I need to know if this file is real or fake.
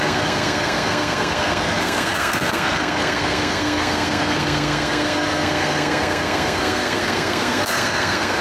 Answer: fake